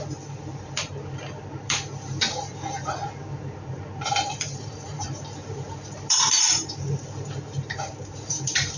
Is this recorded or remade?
remade